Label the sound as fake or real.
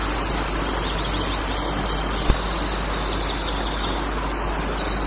real